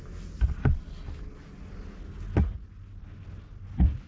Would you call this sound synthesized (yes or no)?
no